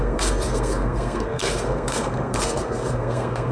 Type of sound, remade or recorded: remade